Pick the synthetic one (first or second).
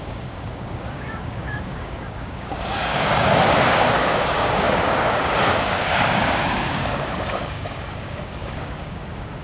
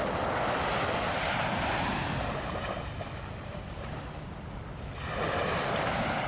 first